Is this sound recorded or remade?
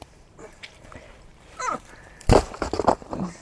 remade